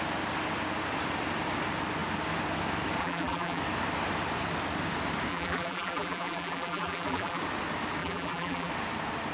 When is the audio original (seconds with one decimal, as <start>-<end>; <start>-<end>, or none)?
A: 0.0-3.0; 3.6-5.3; 7.4-8.0; 8.7-9.3